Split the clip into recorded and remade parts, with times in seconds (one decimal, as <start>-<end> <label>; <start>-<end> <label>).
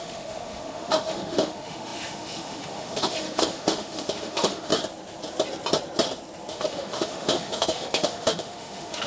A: 0.0-4.7 remade; 4.7-6.5 recorded; 6.5-9.1 remade